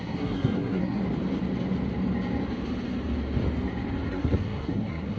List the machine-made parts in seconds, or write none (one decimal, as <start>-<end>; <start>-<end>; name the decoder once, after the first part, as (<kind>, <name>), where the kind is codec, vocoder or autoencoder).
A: 0.0-1.0 (codec, SNAC); 4.1-5.2

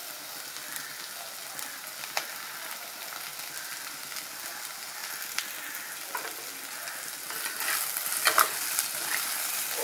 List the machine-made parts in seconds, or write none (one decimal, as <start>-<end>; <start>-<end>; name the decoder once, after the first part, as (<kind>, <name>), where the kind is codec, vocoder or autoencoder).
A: none

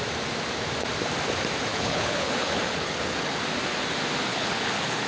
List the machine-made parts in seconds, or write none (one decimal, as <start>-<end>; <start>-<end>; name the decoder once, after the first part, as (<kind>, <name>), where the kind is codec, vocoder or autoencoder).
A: 1.7-3.4 (codec, HILCodec); 4.3-5.1

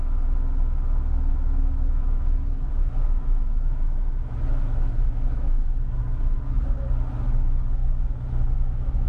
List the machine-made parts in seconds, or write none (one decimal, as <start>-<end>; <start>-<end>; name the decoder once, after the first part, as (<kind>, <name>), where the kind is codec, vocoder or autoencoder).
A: 1.3-6.2 (autoencoder, DAC-VAE); 7.8-9.1

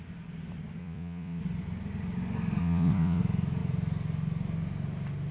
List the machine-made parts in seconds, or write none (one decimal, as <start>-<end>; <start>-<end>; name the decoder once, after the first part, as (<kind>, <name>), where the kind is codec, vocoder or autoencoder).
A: 0.8-1.4 (vocoder, Vocos); 2.6-3.2

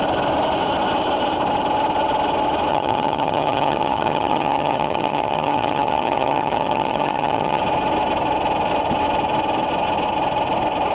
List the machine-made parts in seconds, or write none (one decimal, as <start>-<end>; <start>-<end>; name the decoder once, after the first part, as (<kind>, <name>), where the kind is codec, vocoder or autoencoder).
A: 2.7-7.6 (vocoder, HiFi-GAN)

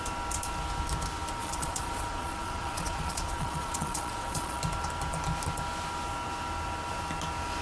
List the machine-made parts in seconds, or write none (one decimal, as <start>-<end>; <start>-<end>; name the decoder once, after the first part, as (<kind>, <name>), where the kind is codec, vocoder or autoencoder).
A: 1.4-4.6 (vocoder, Vocos)